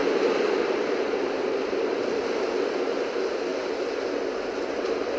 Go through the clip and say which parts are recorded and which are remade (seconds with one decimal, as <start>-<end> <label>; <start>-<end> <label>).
0.0-5.2 recorded